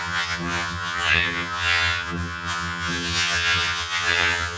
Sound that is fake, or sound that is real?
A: fake